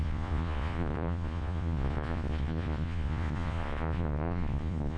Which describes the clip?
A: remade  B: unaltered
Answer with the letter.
A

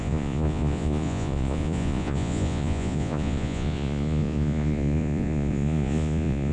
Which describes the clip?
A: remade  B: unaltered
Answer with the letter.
A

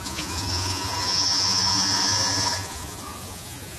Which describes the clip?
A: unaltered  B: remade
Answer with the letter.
B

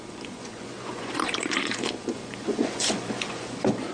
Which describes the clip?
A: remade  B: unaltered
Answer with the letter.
A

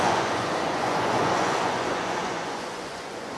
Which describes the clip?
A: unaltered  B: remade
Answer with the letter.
B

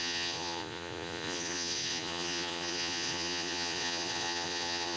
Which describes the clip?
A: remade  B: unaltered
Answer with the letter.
A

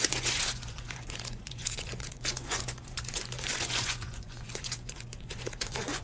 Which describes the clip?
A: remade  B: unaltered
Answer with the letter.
A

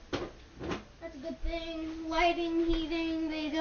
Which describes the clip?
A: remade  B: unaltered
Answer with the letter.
B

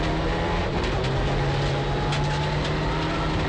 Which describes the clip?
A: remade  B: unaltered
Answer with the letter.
B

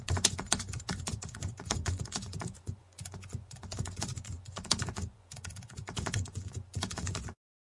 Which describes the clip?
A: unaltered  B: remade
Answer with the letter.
B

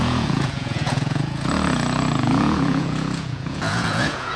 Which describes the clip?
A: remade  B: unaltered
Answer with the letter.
A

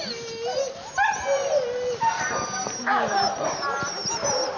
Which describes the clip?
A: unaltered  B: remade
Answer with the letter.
A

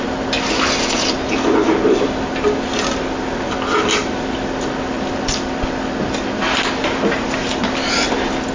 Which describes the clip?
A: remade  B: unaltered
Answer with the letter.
B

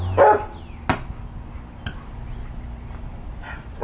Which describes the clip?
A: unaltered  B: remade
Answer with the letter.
A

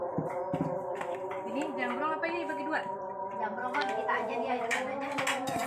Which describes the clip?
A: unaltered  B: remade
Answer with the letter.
A